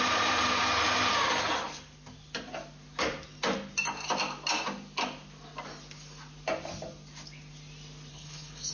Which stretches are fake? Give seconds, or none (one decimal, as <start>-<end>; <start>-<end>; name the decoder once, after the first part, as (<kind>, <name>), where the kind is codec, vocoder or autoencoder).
8.1-8.7 (codec, HILCodec)